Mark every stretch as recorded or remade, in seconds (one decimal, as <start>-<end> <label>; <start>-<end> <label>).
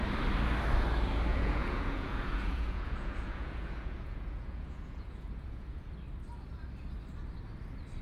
0.0-1.3 recorded; 1.3-5.9 remade; 5.9-8.0 recorded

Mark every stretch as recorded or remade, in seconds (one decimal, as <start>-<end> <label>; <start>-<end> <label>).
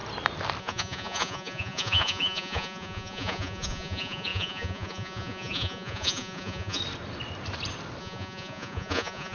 0.0-0.6 recorded; 0.6-6.8 remade; 6.8-8.0 recorded; 8.0-9.3 remade